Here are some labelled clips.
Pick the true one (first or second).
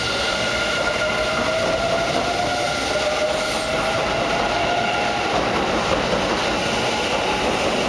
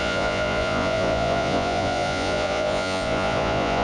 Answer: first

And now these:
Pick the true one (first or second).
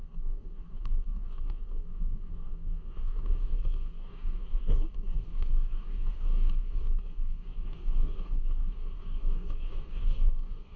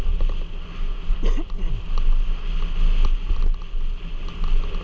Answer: second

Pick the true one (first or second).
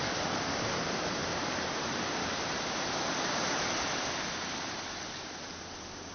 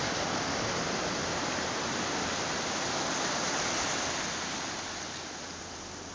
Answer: second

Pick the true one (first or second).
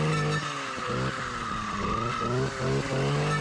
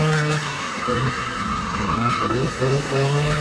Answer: first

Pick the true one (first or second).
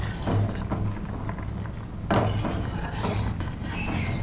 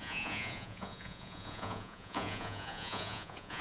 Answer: first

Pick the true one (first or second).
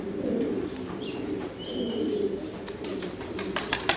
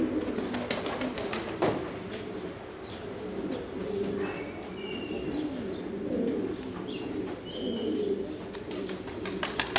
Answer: second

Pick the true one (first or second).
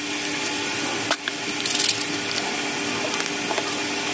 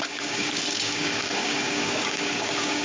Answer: first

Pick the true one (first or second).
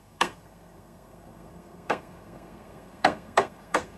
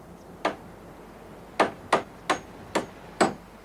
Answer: second